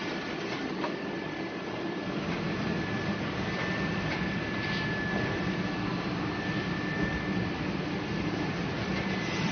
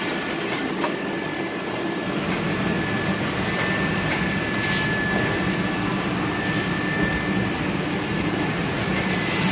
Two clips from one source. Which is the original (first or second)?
second